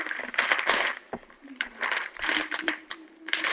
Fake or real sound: fake